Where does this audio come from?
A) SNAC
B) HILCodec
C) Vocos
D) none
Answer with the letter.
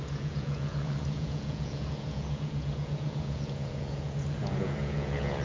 C